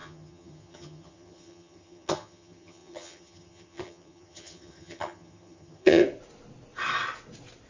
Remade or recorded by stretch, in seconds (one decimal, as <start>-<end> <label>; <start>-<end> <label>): 0.0-6.0 remade; 6.0-7.7 recorded